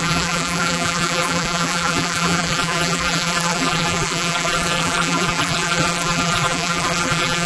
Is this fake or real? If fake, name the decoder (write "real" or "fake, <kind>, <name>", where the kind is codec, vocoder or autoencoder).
fake, vocoder, BigVGAN v2